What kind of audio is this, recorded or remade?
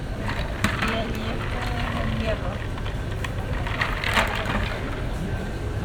remade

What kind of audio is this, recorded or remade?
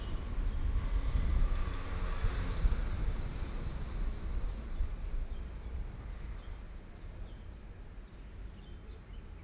recorded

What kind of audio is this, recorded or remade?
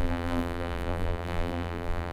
remade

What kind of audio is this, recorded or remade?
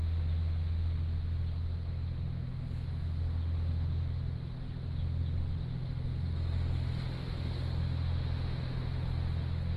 recorded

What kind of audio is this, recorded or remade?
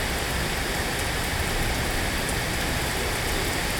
recorded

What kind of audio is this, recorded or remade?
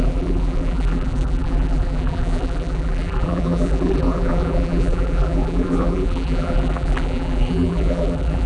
remade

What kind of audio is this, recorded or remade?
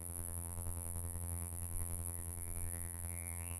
remade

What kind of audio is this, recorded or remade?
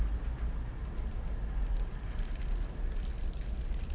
recorded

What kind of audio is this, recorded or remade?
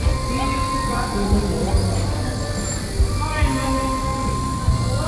recorded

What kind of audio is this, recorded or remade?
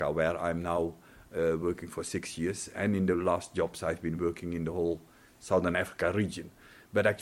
remade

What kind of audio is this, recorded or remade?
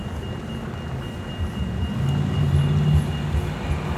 recorded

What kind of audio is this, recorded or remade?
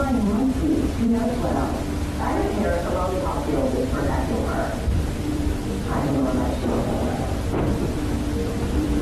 remade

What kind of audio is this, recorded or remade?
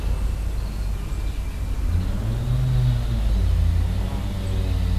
recorded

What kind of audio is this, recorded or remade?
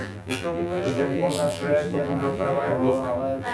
remade